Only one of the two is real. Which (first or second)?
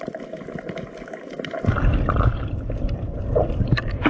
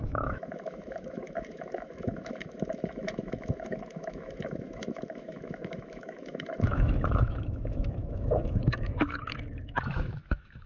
first